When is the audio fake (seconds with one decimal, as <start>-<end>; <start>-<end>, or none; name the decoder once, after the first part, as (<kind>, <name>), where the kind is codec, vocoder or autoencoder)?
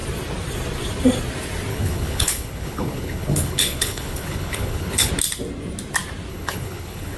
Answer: 1.7-5.1 (codec, HILCodec); 6.3-7.2